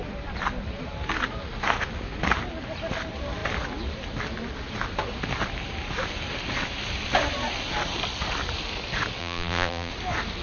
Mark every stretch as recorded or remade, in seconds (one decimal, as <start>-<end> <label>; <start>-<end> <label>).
0.0-9.2 recorded; 9.2-9.9 remade; 9.9-10.4 recorded

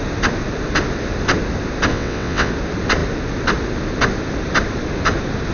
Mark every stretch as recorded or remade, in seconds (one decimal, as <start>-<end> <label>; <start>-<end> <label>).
0.0-1.9 recorded; 1.9-2.5 remade; 2.5-5.5 recorded

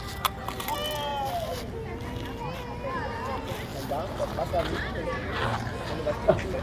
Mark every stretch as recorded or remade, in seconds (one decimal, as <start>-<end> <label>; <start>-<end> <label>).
0.0-6.6 recorded

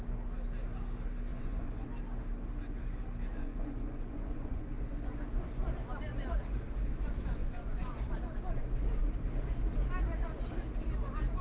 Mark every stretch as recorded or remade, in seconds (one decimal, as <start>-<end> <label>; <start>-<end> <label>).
0.0-1.3 recorded; 1.3-1.9 remade; 1.9-3.4 recorded; 3.4-4.7 remade; 4.7-7.4 recorded; 7.4-8.1 remade; 8.1-11.4 recorded

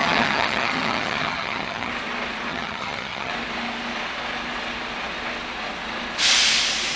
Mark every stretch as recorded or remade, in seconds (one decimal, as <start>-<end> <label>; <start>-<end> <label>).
0.0-1.9 remade; 1.9-2.5 recorded; 2.5-3.3 remade; 3.3-7.0 recorded

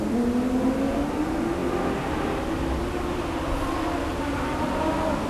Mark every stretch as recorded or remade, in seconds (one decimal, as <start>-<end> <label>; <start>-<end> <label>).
0.0-5.3 recorded

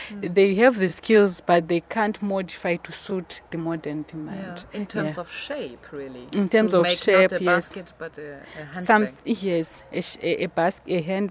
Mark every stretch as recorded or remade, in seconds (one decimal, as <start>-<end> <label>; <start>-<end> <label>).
0.0-0.9 recorded; 0.9-1.7 remade; 1.7-3.1 recorded; 3.1-5.0 remade; 5.0-11.3 recorded

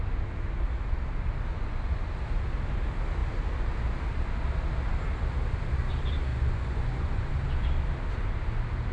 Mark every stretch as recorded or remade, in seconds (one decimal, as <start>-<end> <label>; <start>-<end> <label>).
0.0-1.5 recorded; 1.5-2.1 remade; 2.1-6.3 recorded; 6.3-7.3 remade; 7.3-8.9 recorded